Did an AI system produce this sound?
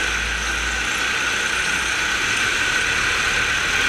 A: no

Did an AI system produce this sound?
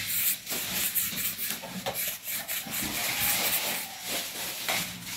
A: no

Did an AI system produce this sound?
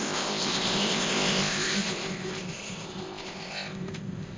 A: yes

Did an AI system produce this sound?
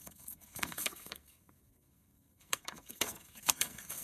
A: yes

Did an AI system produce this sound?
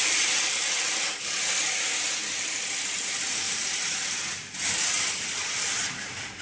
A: no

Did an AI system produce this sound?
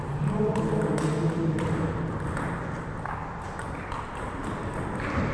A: no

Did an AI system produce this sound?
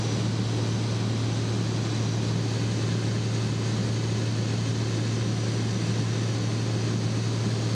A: no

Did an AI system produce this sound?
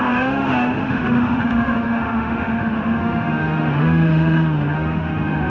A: yes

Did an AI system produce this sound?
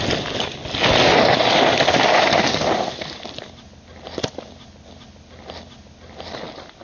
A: no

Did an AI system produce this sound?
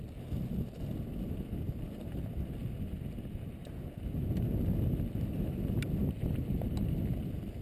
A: no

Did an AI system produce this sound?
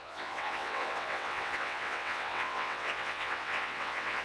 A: yes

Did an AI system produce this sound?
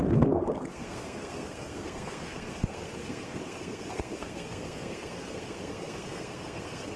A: yes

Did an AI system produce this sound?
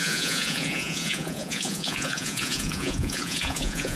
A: yes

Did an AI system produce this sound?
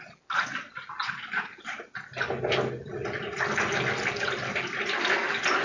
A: no